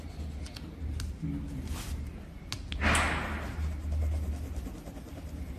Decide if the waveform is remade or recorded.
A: recorded